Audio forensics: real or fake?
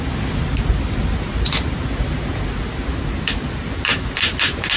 real